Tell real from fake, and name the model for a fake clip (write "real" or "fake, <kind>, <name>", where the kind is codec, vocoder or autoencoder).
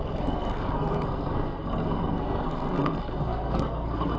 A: fake, codec, SNAC